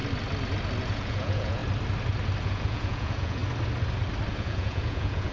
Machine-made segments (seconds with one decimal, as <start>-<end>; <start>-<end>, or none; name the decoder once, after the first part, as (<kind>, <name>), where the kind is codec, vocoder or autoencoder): 0.8-1.6 (vocoder, Vocos); 2.4-3.4; 4.4-5.3